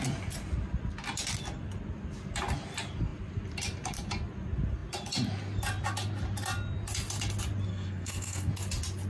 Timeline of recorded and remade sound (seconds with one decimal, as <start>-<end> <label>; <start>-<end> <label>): 0.0-7.7 recorded; 7.7-8.5 remade; 8.5-9.1 recorded